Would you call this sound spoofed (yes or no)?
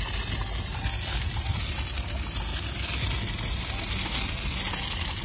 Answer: no